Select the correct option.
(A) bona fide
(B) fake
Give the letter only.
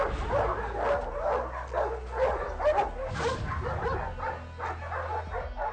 A